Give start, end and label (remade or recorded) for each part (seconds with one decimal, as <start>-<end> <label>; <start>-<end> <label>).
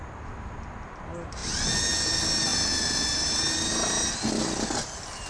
0.0-5.3 recorded